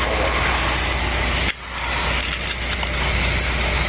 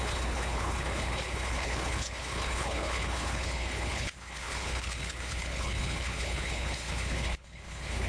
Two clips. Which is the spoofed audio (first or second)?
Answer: second